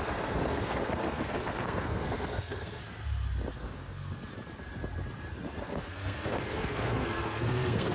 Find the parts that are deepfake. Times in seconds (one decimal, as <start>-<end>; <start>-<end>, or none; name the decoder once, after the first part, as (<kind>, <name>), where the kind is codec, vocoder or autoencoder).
0.0-2.8 (codec, SNAC); 3.5-4.3; 5.6-7.9